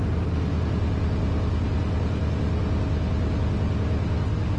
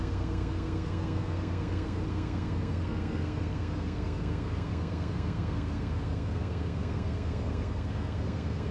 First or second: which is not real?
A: second